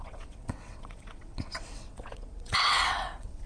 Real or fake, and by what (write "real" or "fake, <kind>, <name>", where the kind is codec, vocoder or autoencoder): fake, vocoder, WaveNeXt